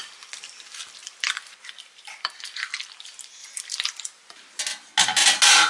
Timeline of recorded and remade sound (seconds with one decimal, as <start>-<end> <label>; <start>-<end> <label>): 0.0-1.0 recorded; 1.0-2.9 remade; 2.9-3.4 recorded; 3.4-4.6 remade; 4.6-5.7 recorded